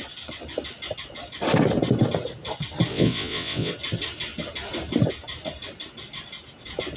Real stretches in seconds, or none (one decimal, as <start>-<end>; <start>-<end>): 0.0-2.9; 3.7-7.0